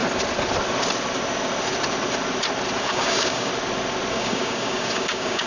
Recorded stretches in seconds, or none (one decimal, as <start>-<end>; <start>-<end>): 0.0-2.8; 3.5-4.1